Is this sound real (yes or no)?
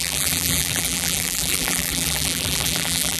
no